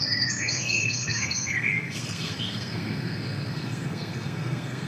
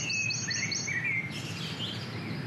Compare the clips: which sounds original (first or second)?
second